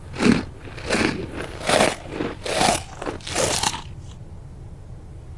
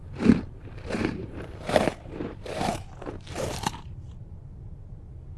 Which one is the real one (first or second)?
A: first